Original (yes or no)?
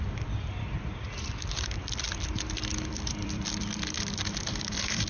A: no